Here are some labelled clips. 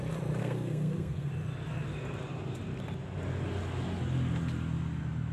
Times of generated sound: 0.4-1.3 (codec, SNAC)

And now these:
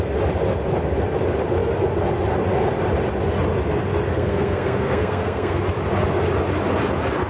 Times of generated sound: 4.1-5.6 (codec, SNAC)